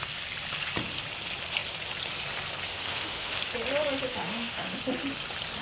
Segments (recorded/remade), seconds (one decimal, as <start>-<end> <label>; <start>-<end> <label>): 0.0-2.7 recorded; 2.7-3.4 remade; 3.4-4.1 recorded; 4.1-4.8 remade; 4.8-5.6 recorded

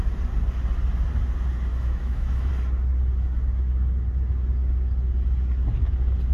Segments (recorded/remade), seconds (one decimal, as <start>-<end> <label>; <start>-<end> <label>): 0.0-1.7 recorded; 1.7-2.5 remade; 2.5-6.3 recorded